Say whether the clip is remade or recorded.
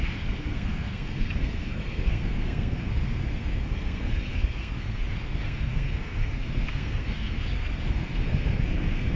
remade